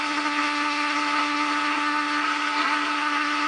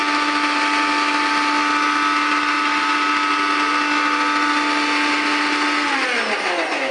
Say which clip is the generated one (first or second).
first